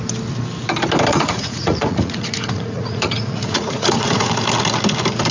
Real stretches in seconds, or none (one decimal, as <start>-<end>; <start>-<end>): 0.0-1.1; 4.3-5.3